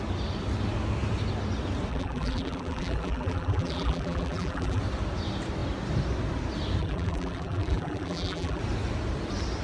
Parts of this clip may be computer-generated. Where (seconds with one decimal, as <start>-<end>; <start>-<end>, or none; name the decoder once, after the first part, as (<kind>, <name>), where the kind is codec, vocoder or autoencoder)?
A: 1.9-4.8 (vocoder, BigVGAN v2); 6.8-8.6